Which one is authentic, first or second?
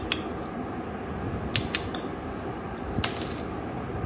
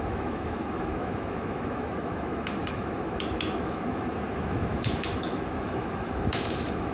first